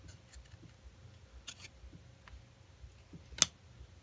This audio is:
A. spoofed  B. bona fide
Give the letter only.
B